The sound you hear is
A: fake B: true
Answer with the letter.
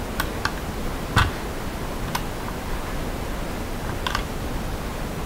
B